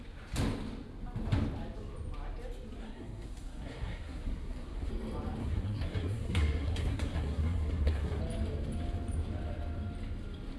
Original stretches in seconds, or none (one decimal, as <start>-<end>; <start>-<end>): 0.0-2.8; 4.9-5.4; 8.2-10.6